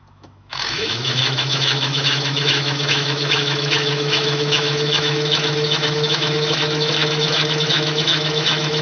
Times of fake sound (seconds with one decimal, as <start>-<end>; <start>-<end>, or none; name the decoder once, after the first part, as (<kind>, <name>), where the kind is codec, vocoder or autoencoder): 0.0-8.8 (autoencoder, DAC-VAE)